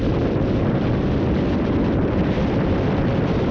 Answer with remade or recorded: remade